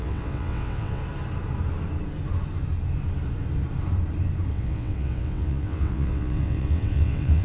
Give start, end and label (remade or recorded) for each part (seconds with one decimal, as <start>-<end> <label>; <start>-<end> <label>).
0.0-1.0 remade; 1.0-4.5 recorded; 4.5-7.4 remade